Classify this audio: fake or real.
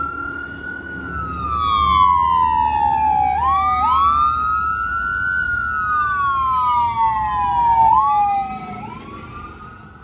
real